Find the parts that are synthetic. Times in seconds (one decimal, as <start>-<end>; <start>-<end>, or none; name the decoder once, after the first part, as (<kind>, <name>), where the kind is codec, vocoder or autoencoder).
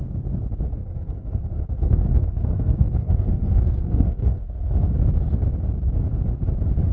0.8-4.9 (codec, SNAC)